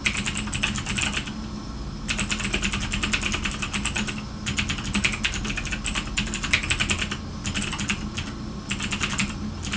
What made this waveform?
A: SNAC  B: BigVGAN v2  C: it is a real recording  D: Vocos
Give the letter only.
C